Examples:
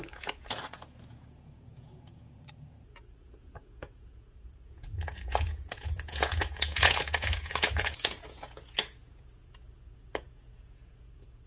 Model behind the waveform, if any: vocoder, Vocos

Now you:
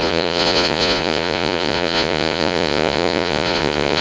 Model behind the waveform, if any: vocoder, Vocos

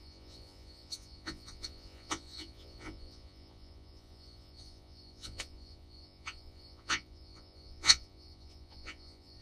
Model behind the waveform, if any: vocoder, Vocos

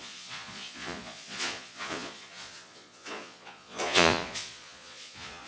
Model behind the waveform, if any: vocoder, Vocos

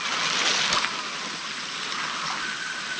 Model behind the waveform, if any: none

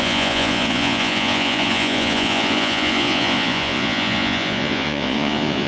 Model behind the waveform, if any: vocoder, Vocos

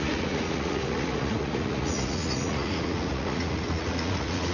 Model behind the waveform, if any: vocoder, Vocos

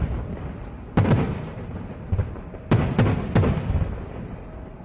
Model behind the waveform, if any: none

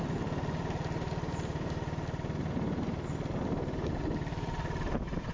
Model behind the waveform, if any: none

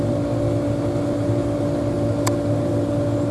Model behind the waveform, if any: none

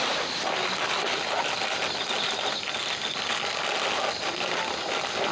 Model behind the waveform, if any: none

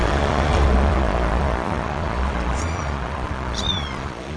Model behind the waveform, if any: vocoder, Vocos